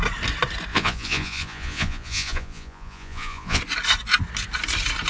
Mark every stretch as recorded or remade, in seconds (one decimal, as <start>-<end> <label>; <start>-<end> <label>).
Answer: 0.0-0.7 recorded; 0.7-3.6 remade; 3.6-5.1 recorded